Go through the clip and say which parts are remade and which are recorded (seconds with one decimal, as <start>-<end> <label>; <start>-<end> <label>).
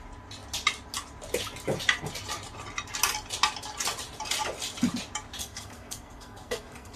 0.0-5.4 recorded; 5.4-7.0 remade